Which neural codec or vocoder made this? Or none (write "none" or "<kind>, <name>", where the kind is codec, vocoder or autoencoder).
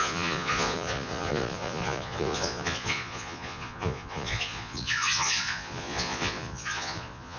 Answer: vocoder, Vocos